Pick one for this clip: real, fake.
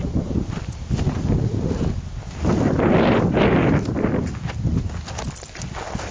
real